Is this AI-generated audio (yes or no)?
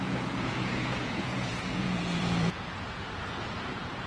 yes